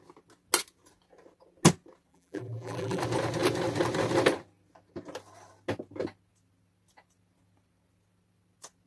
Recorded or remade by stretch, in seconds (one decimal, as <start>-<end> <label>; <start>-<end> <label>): 0.0-2.1 recorded; 2.1-3.0 remade; 3.0-8.9 recorded